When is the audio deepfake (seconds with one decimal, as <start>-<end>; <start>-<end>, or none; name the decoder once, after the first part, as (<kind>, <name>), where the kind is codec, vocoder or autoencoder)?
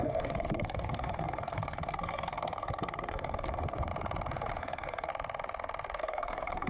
0.0-3.9 (codec, SNAC); 4.6-5.1; 6.0-6.7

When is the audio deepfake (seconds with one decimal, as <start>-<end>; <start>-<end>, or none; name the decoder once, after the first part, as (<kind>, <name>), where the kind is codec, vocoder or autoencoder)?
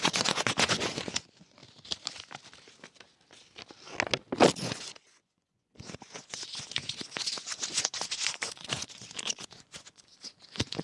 0.0-1.6 (vocoder, Vocos); 4.5-10.8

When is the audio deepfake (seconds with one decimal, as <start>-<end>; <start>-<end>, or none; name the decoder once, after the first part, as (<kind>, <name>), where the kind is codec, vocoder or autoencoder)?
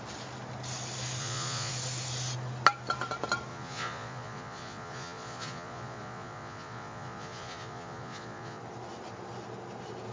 1.2-1.7 (vocoder, Vocos); 3.5-8.6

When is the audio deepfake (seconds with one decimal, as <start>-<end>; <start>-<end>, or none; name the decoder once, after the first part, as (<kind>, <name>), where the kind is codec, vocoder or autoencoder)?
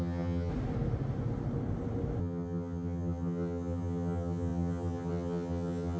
0.0-0.5 (vocoder, HiFi-GAN); 2.2-6.0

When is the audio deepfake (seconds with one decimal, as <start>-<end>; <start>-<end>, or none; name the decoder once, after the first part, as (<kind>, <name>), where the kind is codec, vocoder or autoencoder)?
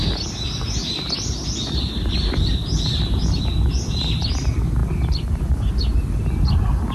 none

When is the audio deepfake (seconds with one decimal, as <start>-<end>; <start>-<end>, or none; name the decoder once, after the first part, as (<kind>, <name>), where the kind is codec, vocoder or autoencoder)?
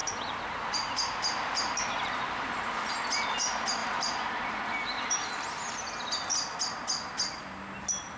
0.0-2.9 (vocoder, BigVGAN v2); 3.8-5.3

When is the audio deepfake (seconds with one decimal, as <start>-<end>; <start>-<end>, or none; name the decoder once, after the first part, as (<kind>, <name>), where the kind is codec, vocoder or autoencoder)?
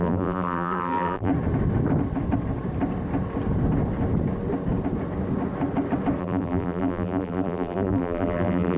0.0-1.3 (vocoder, BigVGAN v2); 6.2-8.8